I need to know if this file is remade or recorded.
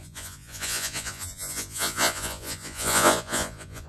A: remade